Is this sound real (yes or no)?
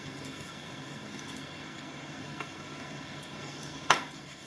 no